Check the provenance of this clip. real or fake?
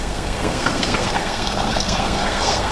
fake